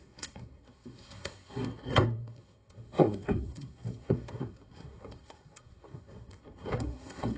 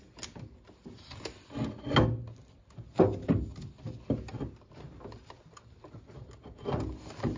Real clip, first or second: second